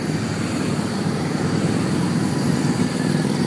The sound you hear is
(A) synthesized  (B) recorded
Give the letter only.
A